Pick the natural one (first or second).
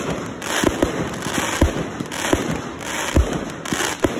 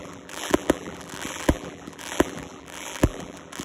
first